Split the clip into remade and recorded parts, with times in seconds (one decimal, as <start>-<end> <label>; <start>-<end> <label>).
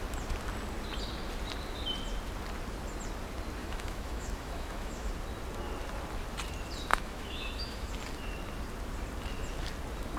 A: 0.0-3.6 recorded; 3.6-5.1 remade; 5.1-6.9 recorded; 6.9-7.9 remade; 7.9-10.2 recorded